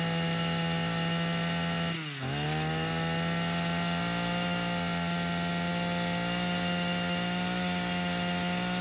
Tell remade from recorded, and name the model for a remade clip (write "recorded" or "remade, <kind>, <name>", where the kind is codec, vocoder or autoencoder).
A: recorded